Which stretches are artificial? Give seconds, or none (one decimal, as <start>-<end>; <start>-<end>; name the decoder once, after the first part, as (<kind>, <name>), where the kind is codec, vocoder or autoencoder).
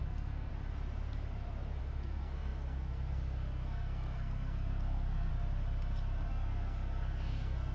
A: 0.0-0.5 (codec, SNAC); 1.8-5.3; 6.3-7.7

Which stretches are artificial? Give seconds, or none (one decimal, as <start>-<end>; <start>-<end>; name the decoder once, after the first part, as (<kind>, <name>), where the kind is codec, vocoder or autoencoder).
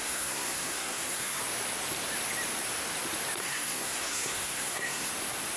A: 0.0-1.4 (codec, SNAC); 3.4-5.1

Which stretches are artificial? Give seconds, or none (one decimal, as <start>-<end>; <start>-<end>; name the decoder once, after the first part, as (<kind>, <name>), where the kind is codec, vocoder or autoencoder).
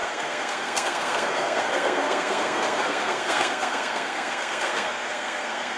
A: 0.0-5.8 (codec, SNAC)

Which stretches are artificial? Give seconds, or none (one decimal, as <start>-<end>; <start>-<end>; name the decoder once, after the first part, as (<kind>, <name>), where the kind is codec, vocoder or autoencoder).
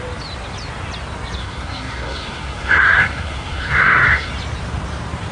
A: 1.4-4.3 (codec, SNAC)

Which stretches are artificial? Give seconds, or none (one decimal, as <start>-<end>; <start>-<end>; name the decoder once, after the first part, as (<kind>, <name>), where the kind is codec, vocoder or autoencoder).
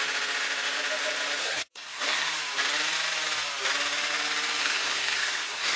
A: 1.4-2.3 (codec, SNAC); 4.6-5.8